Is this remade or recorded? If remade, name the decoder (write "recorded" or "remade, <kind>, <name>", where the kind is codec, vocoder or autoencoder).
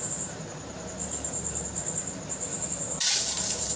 remade, vocoder, BigVGAN v2